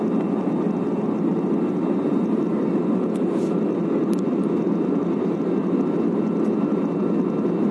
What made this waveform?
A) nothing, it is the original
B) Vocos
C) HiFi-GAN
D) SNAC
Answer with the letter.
A